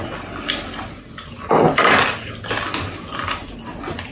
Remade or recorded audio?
recorded